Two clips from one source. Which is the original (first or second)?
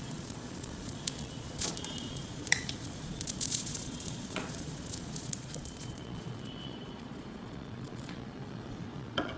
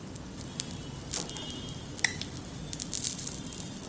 second